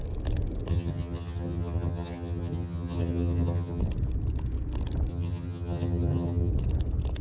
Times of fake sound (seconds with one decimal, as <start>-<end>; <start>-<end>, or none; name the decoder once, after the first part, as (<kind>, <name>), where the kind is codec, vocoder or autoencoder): 0.7-3.8 (vocoder, HiFi-GAN); 5.1-6.5